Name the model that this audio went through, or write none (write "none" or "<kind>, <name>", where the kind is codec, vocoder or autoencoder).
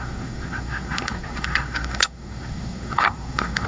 codec, SNAC